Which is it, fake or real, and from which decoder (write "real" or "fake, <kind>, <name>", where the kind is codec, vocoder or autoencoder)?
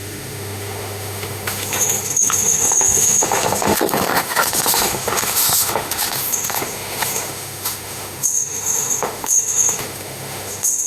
fake, autoencoder, DAC-VAE